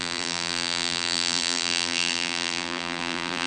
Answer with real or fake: fake